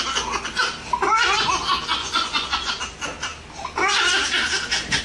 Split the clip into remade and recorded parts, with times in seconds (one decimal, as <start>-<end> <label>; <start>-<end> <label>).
0.0-2.0 recorded; 2.0-2.8 remade; 2.8-5.0 recorded